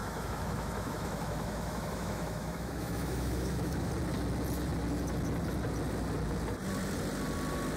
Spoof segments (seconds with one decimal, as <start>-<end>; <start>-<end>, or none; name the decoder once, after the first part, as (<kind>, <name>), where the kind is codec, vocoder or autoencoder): 0.0-3.9 (autoencoder, DAC-VAE)